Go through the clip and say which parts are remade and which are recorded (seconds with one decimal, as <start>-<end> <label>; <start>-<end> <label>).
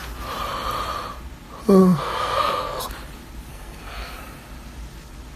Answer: 0.0-1.8 recorded; 1.8-2.8 remade; 2.8-3.5 recorded; 3.5-4.2 remade; 4.2-5.4 recorded